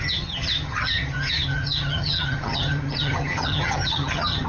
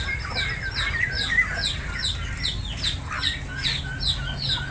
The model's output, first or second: first